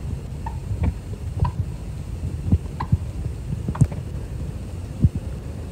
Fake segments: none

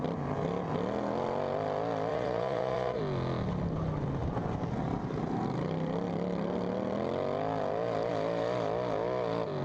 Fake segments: 2.1-3.0 (vocoder, Vocos)

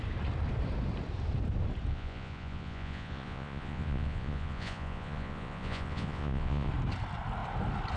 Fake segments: 1.9-6.7 (vocoder, Vocos)

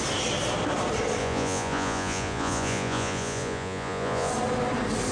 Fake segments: 1.2-4.3 (vocoder, Vocos)

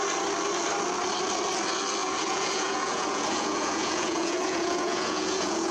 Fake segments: 2.0-5.7 (vocoder, Vocos)

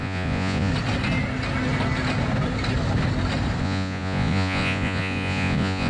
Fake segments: 0.0-0.7 (vocoder, Vocos); 3.6-5.9

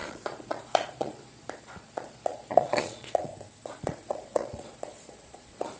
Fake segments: 0.0-3.3 (vocoder, Vocos); 3.8-5.8

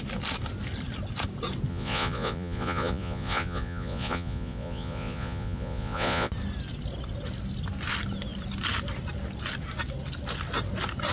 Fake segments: 1.7-6.3 (vocoder, Vocos)